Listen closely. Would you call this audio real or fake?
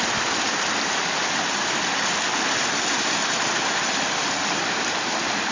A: real